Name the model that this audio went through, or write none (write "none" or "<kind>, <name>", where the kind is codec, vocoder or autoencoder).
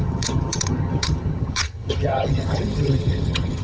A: vocoder, HiFi-GAN